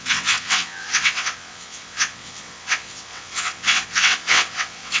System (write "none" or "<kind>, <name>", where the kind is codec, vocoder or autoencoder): vocoder, WaveNeXt